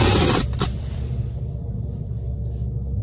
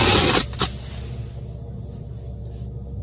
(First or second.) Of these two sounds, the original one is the second